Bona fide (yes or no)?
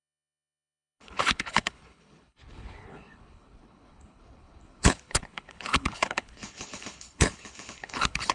no